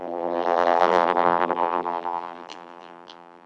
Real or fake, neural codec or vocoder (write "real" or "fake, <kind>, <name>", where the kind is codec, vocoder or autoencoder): fake, vocoder, BigVGAN v2